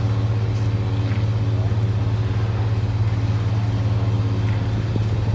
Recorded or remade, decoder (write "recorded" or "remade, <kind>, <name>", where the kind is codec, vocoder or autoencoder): recorded